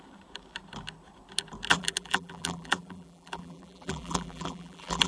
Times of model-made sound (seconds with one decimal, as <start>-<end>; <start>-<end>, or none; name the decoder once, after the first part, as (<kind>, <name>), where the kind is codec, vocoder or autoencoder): 1.7-5.1 (vocoder, BigVGAN v2)